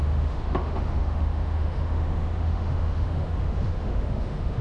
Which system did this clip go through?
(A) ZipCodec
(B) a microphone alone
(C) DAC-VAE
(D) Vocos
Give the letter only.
C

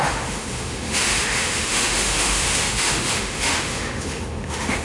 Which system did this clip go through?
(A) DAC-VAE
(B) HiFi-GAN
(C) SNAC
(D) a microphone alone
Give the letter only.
A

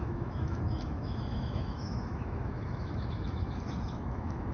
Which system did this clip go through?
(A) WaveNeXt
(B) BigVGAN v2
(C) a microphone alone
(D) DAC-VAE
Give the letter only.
D